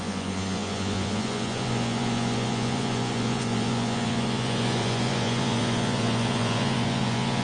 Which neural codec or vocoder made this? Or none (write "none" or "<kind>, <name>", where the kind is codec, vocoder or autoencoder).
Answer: vocoder, Vocos